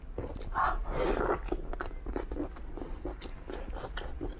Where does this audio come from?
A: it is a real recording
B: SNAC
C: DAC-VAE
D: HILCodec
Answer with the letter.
A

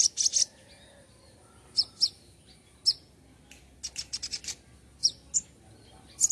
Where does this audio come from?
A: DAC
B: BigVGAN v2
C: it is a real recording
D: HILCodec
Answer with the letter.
C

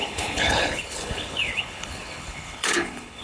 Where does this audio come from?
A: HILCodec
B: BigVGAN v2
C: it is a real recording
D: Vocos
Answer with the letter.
A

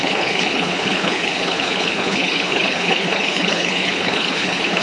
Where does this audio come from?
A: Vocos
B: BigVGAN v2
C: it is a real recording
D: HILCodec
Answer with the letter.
D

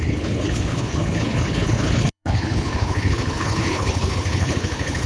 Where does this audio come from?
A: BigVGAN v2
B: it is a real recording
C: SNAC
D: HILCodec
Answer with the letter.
D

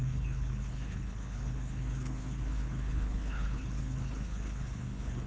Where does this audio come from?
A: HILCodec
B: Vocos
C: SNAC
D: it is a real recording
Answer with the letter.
A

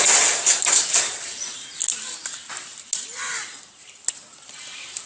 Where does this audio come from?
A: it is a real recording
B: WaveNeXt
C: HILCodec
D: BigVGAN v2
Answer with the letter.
A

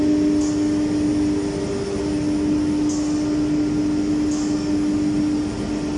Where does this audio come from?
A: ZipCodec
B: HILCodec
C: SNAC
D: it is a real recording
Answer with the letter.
D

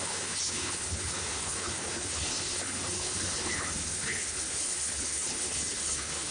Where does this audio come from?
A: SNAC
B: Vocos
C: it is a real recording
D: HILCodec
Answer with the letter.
D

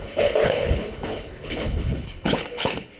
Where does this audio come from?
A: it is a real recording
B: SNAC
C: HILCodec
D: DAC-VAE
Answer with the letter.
C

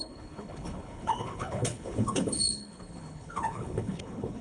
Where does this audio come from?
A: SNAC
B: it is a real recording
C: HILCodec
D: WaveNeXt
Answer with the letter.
C